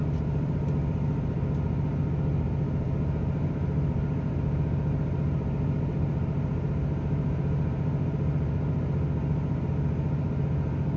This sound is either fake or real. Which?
real